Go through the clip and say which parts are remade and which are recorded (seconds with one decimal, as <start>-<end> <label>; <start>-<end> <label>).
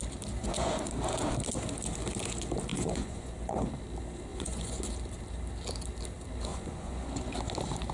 0.0-0.4 recorded; 0.4-0.9 remade; 0.9-2.7 recorded; 2.7-3.7 remade; 3.7-4.3 recorded; 4.3-4.8 remade; 4.8-6.5 recorded; 6.5-7.3 remade; 7.3-7.9 recorded